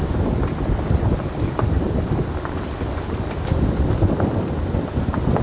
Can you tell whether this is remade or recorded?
recorded